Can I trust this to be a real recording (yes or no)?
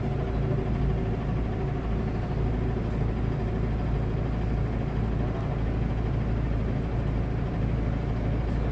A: yes